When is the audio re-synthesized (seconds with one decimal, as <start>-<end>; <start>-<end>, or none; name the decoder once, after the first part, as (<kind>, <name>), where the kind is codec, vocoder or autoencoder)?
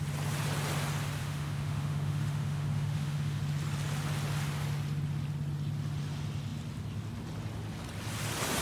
1.2-3.4 (autoencoder, DAC-VAE)